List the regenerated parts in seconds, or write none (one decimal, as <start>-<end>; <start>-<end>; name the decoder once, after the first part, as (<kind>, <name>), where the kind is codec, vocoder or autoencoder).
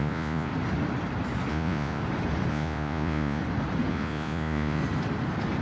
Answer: 0.0-0.5 (vocoder, Vocos); 1.5-2.0; 2.5-3.4; 3.9-4.8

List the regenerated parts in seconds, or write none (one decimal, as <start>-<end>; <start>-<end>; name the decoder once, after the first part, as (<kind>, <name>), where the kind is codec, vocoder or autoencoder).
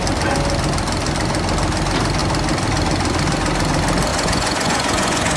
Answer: 4.1-5.4 (vocoder, Vocos)